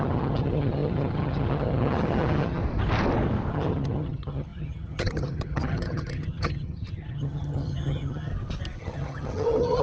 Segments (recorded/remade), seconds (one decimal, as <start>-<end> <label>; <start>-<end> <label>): 0.0-2.6 remade; 2.6-3.5 recorded; 3.5-8.3 remade; 8.3-8.8 recorded; 8.8-9.8 remade